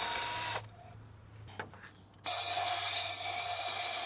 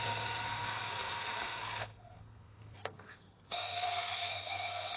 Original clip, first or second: first